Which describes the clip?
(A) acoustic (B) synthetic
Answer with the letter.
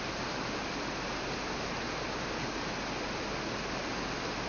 A